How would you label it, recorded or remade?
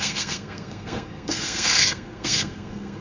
remade